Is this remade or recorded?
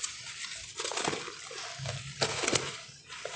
recorded